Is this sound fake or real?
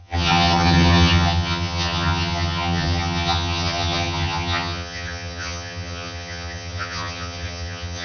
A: fake